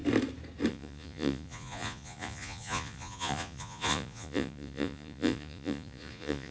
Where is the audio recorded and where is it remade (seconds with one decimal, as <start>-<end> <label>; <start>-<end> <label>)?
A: 0.0-0.7 recorded; 0.7-6.5 remade